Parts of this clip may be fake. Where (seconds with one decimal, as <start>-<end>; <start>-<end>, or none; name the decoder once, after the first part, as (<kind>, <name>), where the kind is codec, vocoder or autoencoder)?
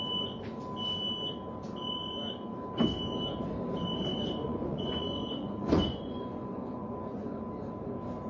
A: 4.4-7.4 (vocoder, Vocos)